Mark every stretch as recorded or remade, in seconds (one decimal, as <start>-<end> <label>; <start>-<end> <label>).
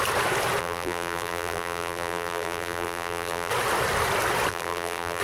0.0-0.6 recorded; 0.6-3.5 remade; 3.5-4.5 recorded; 4.5-5.2 remade